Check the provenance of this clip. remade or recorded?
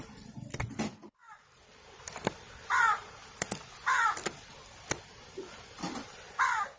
recorded